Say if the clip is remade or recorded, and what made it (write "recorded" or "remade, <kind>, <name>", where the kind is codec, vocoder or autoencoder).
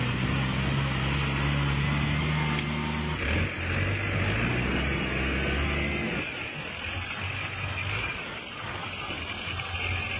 recorded